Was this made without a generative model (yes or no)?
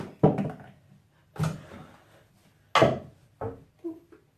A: yes